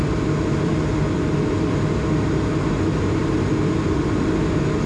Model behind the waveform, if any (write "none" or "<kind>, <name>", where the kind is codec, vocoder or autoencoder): none